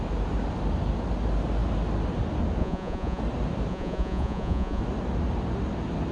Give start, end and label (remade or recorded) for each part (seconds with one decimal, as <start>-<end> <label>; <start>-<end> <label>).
0.0-2.6 recorded; 2.6-3.2 remade; 3.2-3.7 recorded; 3.7-4.8 remade; 4.8-6.1 recorded